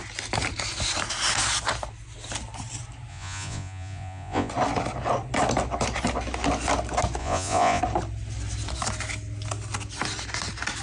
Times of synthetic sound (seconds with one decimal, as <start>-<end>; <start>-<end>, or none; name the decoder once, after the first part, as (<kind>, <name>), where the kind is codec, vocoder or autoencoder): 3.1-4.5 (vocoder, Vocos); 7.2-7.8